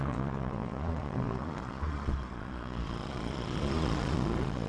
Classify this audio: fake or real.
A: fake